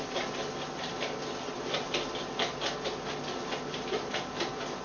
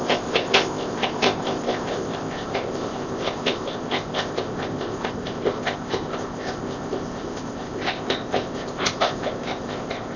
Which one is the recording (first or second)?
first